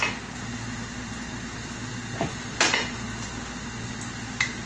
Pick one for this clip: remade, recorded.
recorded